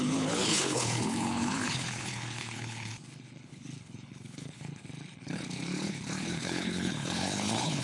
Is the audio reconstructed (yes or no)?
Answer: yes